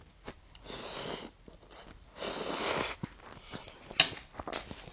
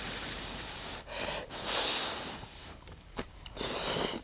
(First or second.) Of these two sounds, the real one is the first